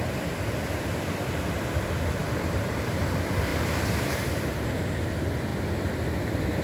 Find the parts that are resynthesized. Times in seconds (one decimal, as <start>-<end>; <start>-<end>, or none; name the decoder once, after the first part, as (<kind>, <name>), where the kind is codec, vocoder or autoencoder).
2.2-3.0 (vocoder, BigVGAN v2); 3.5-5.0